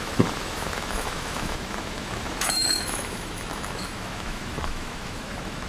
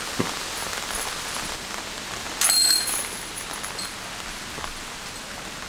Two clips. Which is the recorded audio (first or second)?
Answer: second